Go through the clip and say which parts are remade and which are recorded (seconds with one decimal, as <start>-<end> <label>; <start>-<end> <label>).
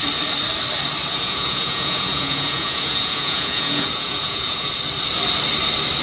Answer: 0.0-1.1 recorded; 1.1-4.7 remade; 4.7-6.0 recorded